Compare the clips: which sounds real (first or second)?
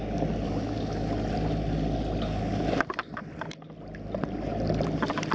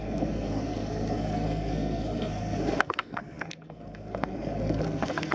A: first